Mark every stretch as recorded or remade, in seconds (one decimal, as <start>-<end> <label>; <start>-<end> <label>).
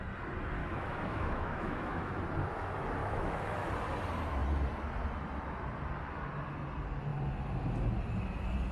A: 0.0-0.6 recorded; 0.6-2.2 remade; 2.2-3.0 recorded; 3.0-3.7 remade; 3.7-8.7 recorded